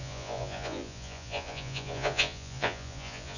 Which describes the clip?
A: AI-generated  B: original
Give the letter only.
A